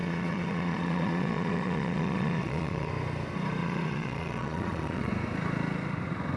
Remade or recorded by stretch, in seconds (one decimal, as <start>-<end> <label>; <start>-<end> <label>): 0.0-2.9 remade; 2.9-3.6 recorded; 3.6-5.1 remade; 5.1-6.4 recorded